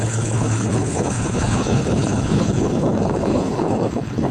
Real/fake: fake